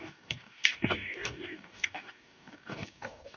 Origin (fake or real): fake